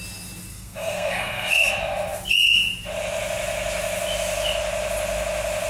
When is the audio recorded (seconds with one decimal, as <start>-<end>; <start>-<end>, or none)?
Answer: 0.0-0.5; 1.7-5.7